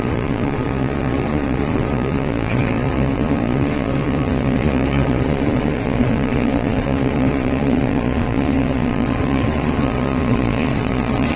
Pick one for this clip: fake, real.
fake